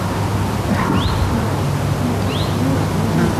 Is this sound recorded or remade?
recorded